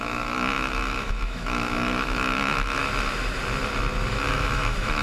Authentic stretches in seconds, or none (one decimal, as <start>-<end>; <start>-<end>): 2.8-4.3